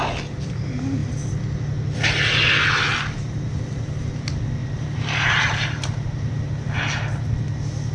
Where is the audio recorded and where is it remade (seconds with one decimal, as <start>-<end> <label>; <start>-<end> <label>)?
0.0-4.6 recorded; 4.6-6.4 remade; 6.4-7.9 recorded